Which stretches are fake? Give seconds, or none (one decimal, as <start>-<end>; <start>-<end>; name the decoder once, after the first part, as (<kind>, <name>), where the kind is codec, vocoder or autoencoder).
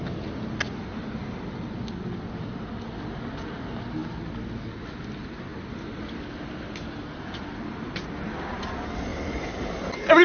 1.2-1.8 (vocoder, BigVGAN v2); 9.1-9.7